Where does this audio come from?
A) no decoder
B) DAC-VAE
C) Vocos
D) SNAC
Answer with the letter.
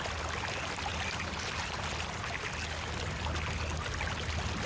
A